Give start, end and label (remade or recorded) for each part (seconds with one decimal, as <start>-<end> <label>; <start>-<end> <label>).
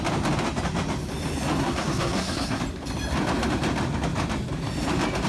0.0-1.6 recorded; 1.6-2.6 remade; 2.6-5.3 recorded